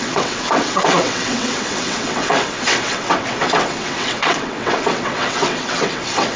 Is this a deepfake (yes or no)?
yes